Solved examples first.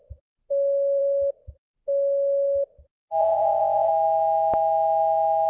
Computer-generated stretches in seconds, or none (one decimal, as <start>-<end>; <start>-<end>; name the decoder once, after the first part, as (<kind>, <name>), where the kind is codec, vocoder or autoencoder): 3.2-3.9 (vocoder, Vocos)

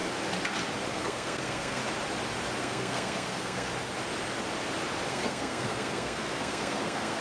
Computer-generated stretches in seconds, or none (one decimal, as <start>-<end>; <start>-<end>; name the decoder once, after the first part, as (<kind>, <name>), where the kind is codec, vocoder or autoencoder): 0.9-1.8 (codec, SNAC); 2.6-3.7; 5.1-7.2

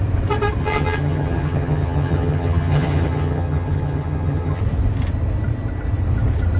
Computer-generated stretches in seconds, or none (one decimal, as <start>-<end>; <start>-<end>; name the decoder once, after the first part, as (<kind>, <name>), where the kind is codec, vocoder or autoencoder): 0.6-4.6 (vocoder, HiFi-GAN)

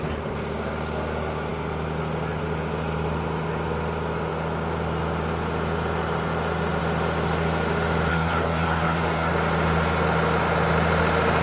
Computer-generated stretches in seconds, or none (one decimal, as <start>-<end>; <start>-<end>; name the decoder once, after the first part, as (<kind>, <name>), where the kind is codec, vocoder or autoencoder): 8.1-9.3 (codec, SNAC)